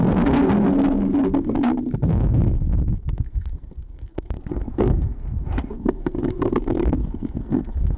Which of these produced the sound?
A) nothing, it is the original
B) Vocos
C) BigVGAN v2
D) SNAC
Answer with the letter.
D